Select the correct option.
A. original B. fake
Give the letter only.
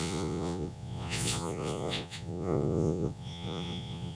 B